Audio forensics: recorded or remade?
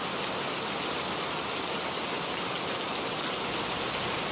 recorded